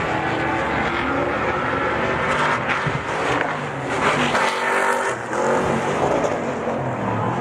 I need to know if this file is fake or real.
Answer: real